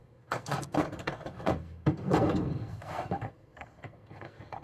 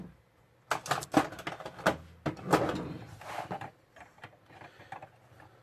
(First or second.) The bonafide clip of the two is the second